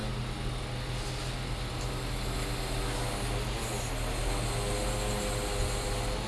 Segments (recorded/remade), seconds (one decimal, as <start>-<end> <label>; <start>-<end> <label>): 0.0-6.3 recorded